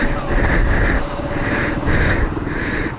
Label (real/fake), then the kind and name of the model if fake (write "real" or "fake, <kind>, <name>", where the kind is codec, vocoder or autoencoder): fake, vocoder, BigVGAN v2